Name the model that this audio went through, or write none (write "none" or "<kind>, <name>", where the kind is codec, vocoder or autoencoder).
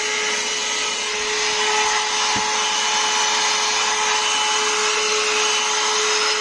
none